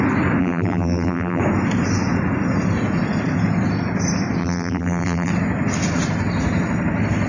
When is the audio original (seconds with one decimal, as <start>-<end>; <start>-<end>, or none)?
0.0-0.4; 1.4-4.4; 5.3-7.3